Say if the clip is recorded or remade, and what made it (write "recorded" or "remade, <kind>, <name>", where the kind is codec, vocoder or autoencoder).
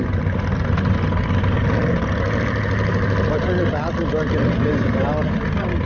recorded